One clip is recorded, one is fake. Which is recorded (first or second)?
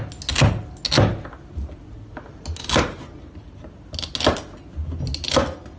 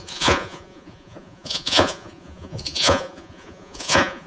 first